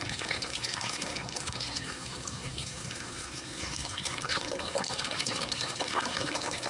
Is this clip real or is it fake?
fake